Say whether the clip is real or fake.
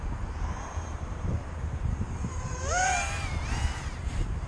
fake